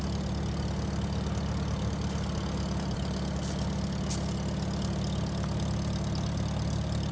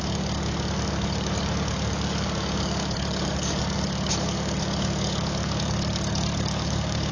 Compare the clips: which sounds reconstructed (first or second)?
second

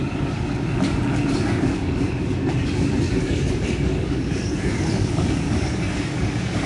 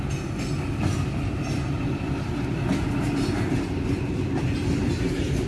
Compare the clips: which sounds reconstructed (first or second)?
first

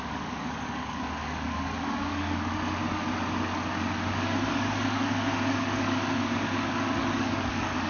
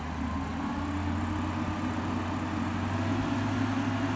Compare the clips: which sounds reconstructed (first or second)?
first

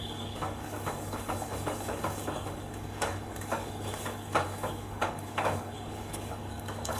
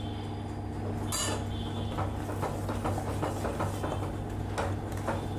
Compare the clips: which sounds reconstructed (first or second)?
first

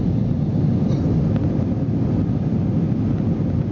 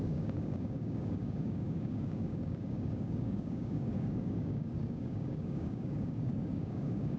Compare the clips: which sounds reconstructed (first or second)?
second